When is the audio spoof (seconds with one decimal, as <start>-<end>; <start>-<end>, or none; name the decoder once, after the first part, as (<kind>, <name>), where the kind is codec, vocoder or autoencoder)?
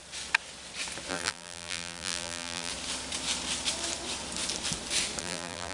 1.1-2.7 (vocoder, BigVGAN v2); 5.2-5.7